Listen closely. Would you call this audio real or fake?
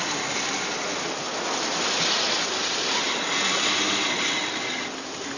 real